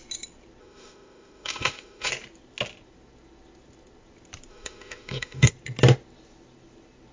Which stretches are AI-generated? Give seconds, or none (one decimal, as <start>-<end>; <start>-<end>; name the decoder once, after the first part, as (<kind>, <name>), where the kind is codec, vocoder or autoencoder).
0.6-2.1 (autoencoder, DAC-VAE); 4.5-5.5